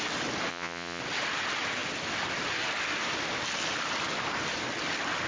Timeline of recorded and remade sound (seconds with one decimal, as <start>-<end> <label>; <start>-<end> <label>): 0.0-0.5 recorded; 0.5-1.0 remade; 1.0-5.3 recorded